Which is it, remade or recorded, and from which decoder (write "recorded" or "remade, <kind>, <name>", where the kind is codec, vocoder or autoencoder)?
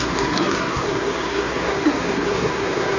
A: remade, codec, SNAC